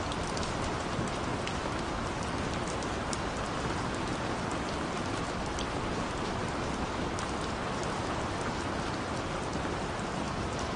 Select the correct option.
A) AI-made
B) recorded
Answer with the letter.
B